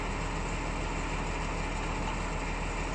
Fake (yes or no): no